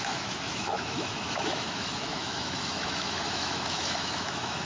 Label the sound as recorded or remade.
remade